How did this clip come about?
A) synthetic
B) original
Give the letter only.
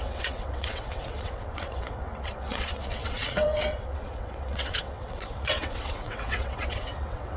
A